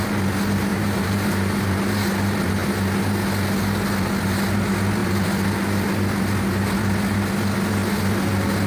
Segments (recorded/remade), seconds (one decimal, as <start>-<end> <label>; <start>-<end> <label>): 0.0-0.7 recorded; 0.7-1.6 remade; 1.6-8.7 recorded